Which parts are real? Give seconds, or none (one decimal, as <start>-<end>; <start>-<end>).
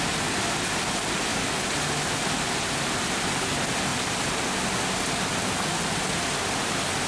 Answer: 0.0-7.1